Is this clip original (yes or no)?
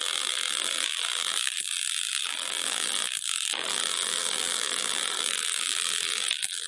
no